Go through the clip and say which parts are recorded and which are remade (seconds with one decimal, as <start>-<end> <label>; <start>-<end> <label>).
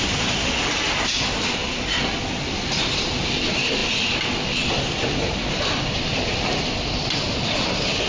0.0-8.1 recorded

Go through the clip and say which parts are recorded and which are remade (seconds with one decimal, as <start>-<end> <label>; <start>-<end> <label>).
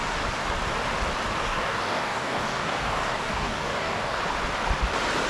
0.0-1.4 recorded; 1.4-4.2 remade; 4.2-5.3 recorded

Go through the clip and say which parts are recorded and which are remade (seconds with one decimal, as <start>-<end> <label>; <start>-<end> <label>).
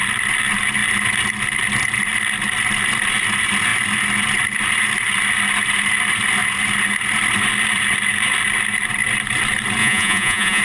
0.0-9.8 recorded; 9.8-10.6 remade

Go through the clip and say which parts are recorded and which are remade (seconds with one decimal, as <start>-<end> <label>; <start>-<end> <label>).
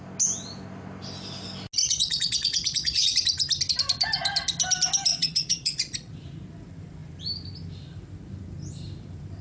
0.0-1.8 recorded; 1.8-3.1 remade; 3.1-5.1 recorded; 5.1-6.1 remade; 6.1-9.4 recorded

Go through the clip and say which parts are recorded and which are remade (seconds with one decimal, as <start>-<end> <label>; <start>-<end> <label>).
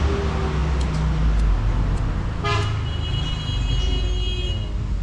0.0-5.0 recorded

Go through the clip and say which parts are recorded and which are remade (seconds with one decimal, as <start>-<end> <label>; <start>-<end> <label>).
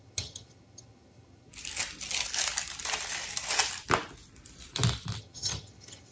0.0-1.5 remade; 1.5-5.2 recorded; 5.2-6.1 remade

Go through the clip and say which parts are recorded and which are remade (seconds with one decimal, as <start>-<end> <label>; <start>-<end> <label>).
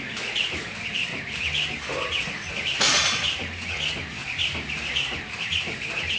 0.0-1.1 remade; 1.1-2.5 recorded; 2.5-6.2 remade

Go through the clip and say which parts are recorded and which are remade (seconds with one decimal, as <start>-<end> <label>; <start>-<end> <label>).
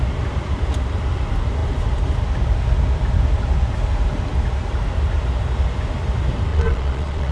0.0-6.5 recorded; 6.5-7.3 remade